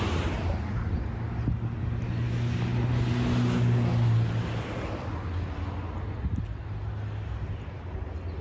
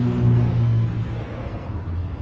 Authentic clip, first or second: first